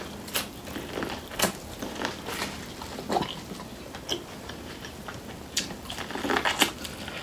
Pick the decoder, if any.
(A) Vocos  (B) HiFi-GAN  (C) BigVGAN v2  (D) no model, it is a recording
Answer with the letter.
D